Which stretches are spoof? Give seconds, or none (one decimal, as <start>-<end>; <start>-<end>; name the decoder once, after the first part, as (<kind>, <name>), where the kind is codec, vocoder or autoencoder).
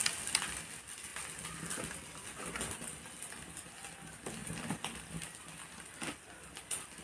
none